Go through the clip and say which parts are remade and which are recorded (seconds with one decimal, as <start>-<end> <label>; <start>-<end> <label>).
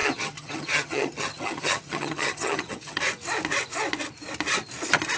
0.0-3.0 remade; 3.0-5.2 recorded